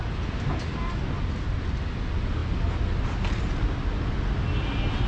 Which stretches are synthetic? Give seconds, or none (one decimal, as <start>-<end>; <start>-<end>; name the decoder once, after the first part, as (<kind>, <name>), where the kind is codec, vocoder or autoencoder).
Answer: none